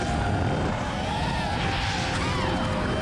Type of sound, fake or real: real